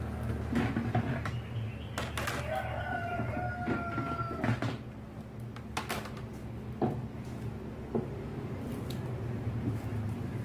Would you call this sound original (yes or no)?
yes